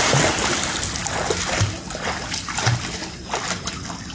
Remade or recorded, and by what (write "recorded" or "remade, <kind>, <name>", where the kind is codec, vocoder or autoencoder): recorded